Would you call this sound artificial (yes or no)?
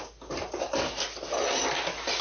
no